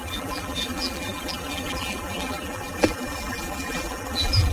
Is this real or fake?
fake